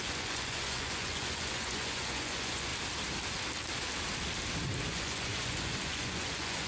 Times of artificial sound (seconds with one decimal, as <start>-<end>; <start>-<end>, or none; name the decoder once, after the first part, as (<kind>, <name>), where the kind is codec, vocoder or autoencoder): 0.0-2.7 (vocoder, Vocos); 4.8-6.7